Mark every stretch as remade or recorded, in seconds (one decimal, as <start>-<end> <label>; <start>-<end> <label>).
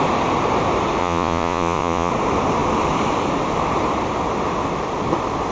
0.0-1.0 recorded; 1.0-2.1 remade; 2.1-5.5 recorded